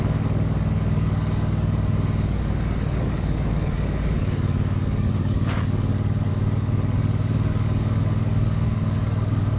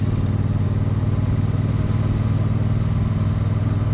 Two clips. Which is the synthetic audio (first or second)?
first